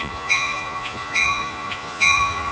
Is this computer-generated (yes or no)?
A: yes